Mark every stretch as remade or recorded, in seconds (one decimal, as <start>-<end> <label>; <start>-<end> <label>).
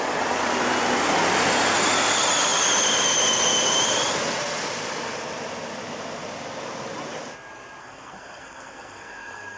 0.0-7.8 recorded; 7.8-9.6 remade